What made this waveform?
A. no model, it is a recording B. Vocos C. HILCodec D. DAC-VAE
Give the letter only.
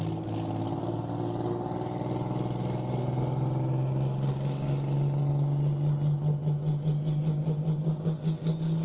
A